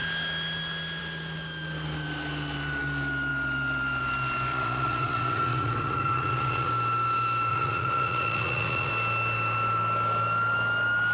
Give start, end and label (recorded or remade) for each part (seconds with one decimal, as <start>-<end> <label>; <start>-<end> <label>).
0.0-4.5 recorded; 4.5-6.7 remade; 6.7-7.5 recorded; 7.5-8.9 remade; 8.9-11.1 recorded